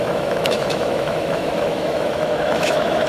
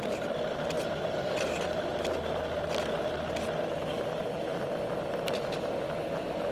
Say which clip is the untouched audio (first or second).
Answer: second